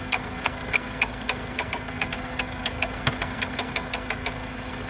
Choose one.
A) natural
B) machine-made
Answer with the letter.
B